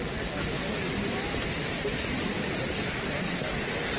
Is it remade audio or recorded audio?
recorded